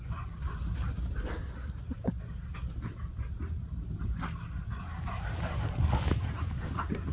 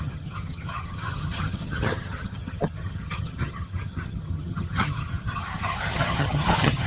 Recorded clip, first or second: first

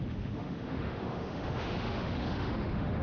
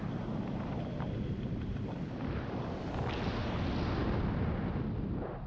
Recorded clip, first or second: second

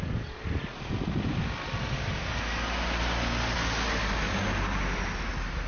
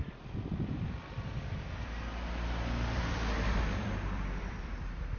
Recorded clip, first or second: first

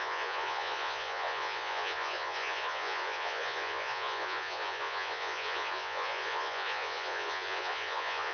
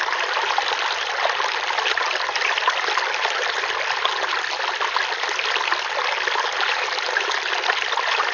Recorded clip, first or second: second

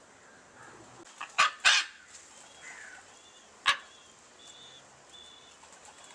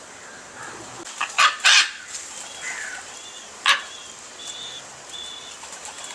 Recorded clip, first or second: first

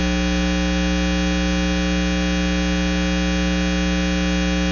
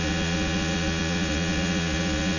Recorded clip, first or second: first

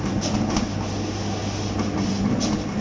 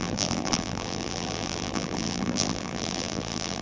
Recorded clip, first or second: first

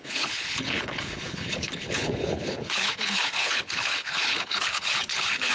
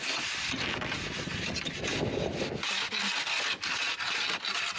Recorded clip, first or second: second